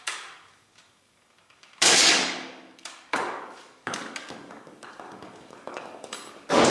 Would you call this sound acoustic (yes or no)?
no